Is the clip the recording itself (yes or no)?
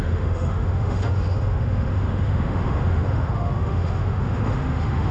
no